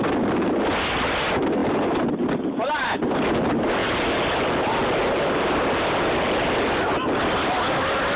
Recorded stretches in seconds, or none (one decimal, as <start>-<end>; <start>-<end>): 0.0-8.2